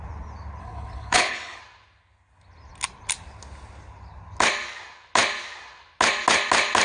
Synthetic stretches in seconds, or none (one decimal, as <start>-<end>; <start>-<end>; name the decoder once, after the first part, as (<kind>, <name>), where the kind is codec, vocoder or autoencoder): 0.6-1.6 (codec, HILCodec)